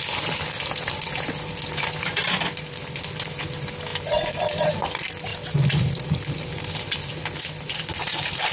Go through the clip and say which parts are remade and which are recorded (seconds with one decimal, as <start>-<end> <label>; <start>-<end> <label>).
0.0-3.9 recorded; 3.9-4.7 remade; 4.7-5.3 recorded; 5.3-7.1 remade; 7.1-8.5 recorded